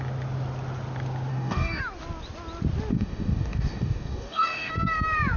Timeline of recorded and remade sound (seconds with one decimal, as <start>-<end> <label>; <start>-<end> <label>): 0.0-1.3 recorded; 1.3-1.8 remade; 1.8-2.9 recorded; 2.9-4.7 remade; 4.7-5.4 recorded